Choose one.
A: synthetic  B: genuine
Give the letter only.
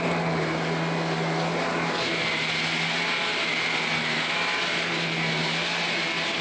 B